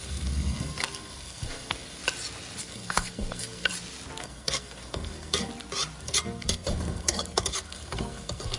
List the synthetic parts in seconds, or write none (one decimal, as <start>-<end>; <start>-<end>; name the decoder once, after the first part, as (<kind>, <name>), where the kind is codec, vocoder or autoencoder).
0.0-2.0 (codec, SNAC); 2.6-3.7; 4.2-5.5; 6.0-8.6